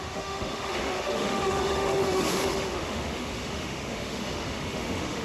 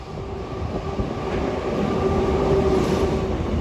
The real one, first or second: second